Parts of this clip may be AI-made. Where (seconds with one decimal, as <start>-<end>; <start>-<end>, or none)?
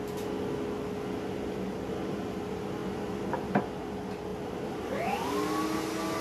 4.3-5.3